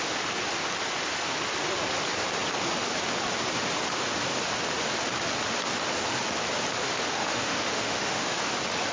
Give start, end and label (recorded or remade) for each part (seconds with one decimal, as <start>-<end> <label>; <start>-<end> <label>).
0.0-6.8 recorded; 6.8-8.4 remade; 8.4-8.9 recorded